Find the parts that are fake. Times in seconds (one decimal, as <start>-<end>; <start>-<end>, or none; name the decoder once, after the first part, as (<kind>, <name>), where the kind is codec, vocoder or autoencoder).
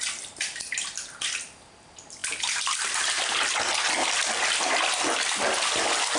none